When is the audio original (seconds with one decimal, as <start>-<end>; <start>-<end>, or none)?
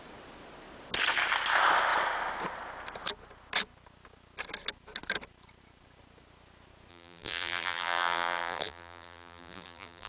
0.0-6.9